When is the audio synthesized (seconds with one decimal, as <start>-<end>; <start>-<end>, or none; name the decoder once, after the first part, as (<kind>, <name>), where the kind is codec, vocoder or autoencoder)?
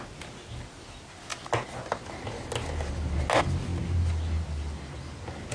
none